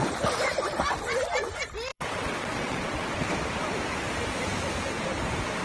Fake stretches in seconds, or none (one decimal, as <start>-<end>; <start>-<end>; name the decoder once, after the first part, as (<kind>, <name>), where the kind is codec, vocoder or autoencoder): 1.9-3.3 (vocoder, WaveNeXt)

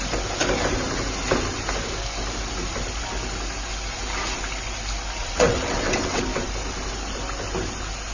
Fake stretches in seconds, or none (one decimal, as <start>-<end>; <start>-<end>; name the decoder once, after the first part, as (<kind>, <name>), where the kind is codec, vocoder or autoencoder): 5.2-6.2 (vocoder, WaveNeXt)

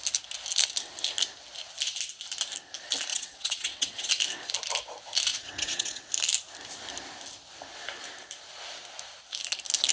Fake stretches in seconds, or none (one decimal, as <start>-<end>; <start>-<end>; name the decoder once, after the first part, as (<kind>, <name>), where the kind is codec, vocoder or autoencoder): 3.1-4.1 (vocoder, WaveNeXt); 5.3-6.1